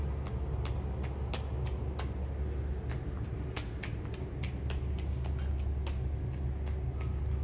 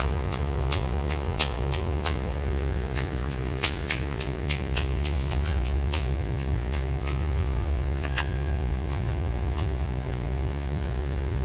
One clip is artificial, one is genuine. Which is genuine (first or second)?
first